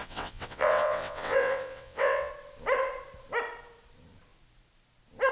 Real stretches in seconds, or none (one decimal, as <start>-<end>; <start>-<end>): 2.3-5.3